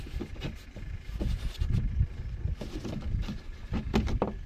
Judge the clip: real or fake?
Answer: real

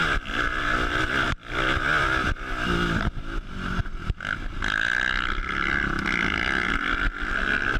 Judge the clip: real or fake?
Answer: real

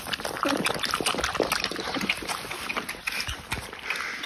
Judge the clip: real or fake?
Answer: real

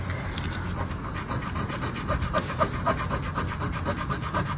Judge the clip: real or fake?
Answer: real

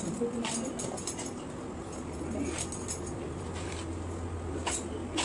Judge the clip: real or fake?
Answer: real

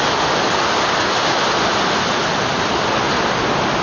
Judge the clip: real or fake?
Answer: real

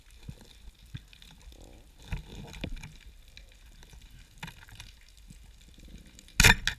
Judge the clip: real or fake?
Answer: real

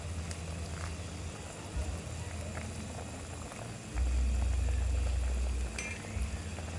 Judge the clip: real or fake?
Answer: real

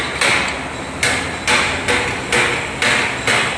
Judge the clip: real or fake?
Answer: real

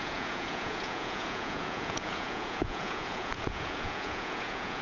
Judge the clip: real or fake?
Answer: fake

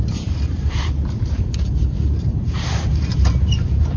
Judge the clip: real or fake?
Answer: fake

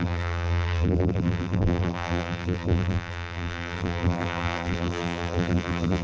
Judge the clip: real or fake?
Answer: fake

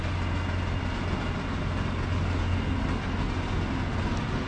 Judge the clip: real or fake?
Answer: real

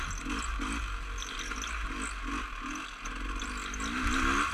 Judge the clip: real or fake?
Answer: real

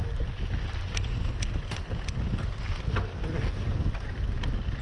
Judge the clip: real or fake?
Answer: real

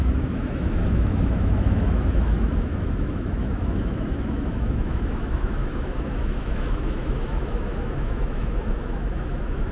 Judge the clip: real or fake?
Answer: fake